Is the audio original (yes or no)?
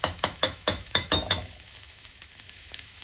no